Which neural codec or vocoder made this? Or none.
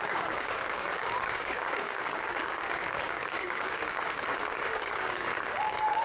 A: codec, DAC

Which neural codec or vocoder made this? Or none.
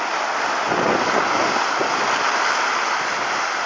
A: none